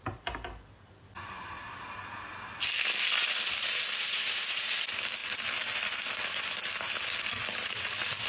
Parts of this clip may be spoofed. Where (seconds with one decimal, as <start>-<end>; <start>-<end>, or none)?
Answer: 0.0-8.3